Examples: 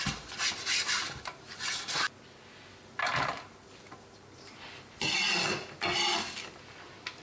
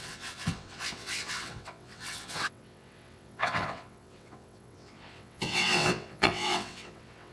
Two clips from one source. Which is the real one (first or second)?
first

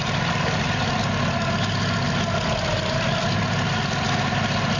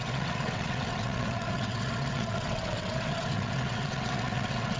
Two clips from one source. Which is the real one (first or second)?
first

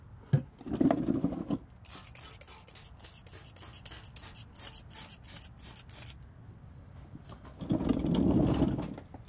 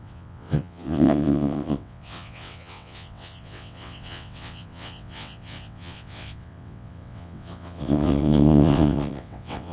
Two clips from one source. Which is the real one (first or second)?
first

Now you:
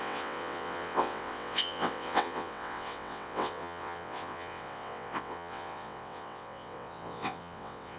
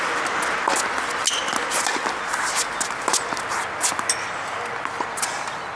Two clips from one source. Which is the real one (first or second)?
second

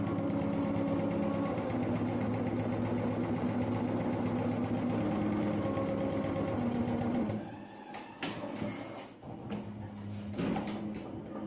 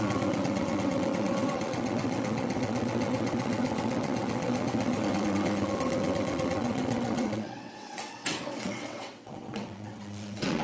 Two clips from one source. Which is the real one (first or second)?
first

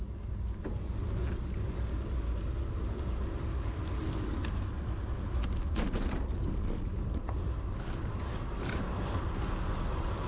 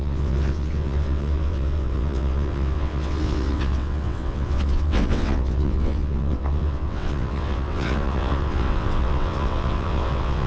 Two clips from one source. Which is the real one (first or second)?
first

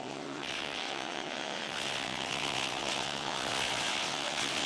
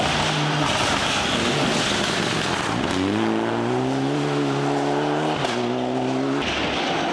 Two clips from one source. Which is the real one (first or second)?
second